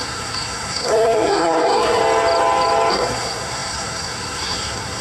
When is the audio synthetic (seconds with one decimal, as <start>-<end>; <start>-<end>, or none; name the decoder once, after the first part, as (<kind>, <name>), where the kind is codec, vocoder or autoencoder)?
0.0-2.0 (codec, SNAC); 2.9-5.0